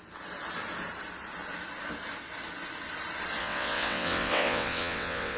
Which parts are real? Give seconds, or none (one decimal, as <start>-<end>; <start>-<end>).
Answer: 0.0-3.4